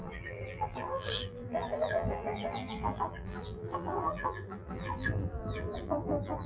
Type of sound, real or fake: fake